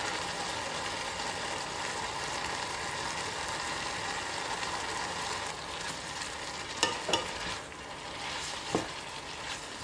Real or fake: real